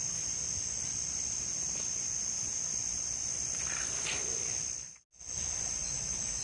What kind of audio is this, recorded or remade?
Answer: recorded